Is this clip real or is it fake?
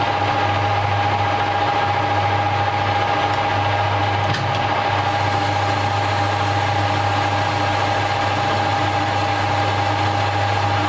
real